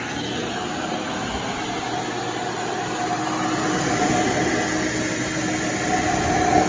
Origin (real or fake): real